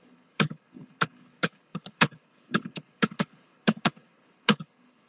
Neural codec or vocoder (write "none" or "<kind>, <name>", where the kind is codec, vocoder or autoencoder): codec, HILCodec